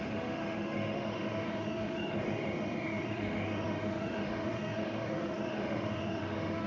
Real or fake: fake